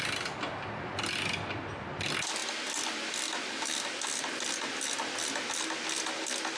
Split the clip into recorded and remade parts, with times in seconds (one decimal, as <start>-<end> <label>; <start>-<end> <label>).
0.0-6.6 recorded